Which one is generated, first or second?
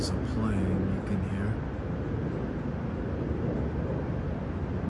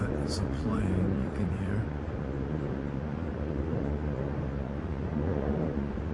second